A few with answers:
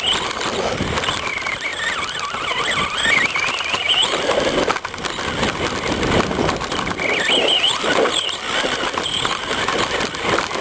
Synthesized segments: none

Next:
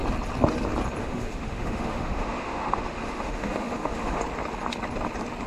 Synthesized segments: 1.0-4.2 (autoencoder, DAC-VAE)

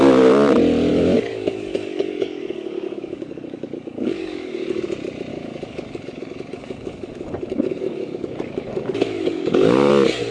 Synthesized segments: 0.9-4.8 (codec, DAC); 5.3-9.9

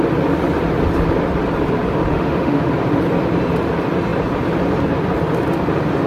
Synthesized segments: 2.1-2.7 (autoencoder, DAC-VAE)

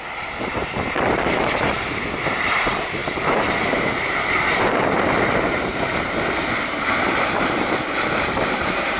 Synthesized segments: 0.0-9.0 (vocoder, BigVGAN v2)

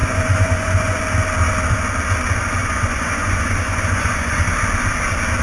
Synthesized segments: 0.0-1.0 (vocoder, Vocos); 2.6-4.4

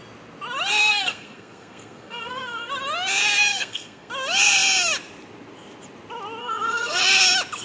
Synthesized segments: 0.8-2.7 (codec, SNAC); 3.5-4.1; 6.4-7.0

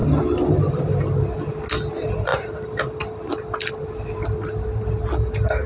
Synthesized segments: 0.0-0.8 (vocoder, BigVGAN v2); 2.3-3.7